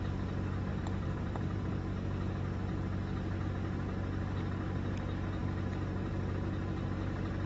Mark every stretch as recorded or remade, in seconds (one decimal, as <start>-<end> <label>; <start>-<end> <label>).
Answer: 0.0-0.7 recorded; 0.7-1.7 remade; 1.7-7.5 recorded